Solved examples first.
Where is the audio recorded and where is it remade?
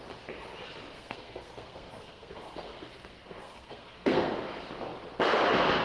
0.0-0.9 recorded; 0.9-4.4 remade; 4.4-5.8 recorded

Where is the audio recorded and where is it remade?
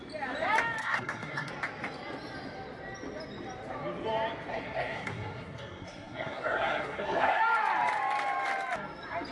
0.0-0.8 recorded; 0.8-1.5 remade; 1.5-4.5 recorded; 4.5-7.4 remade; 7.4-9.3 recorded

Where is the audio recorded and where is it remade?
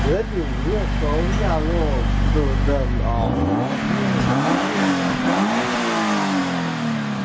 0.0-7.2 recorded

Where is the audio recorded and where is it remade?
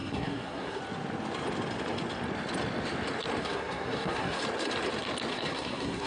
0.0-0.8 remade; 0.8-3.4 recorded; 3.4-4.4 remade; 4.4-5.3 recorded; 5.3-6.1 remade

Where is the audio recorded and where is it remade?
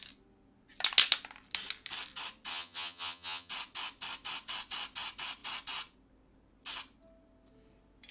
0.0-2.5 recorded; 2.5-3.5 remade; 3.5-8.1 recorded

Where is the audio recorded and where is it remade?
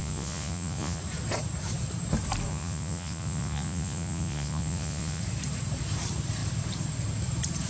0.0-1.0 remade; 1.0-2.5 recorded; 2.5-5.2 remade; 5.2-7.7 recorded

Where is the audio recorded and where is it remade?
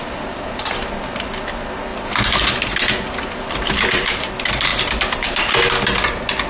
0.0-0.7 remade; 0.7-1.9 recorded; 1.9-4.3 remade; 4.3-4.7 recorded; 4.7-5.5 remade; 5.5-6.5 recorded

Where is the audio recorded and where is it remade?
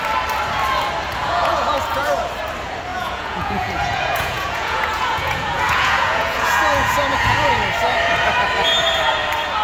0.0-1.2 recorded; 1.2-2.1 remade; 2.1-2.9 recorded; 2.9-7.5 remade; 7.5-9.6 recorded